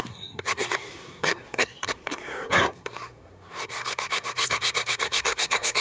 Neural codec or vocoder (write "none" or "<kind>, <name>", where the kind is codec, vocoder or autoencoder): codec, SNAC